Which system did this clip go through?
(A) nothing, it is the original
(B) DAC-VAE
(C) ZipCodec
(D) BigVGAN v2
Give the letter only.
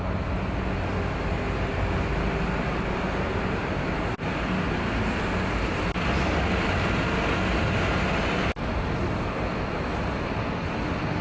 A